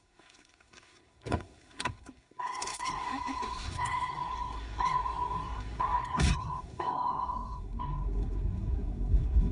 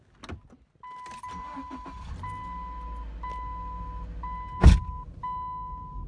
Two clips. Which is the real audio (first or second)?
second